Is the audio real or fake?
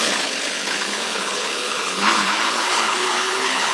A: fake